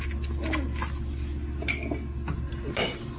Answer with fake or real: real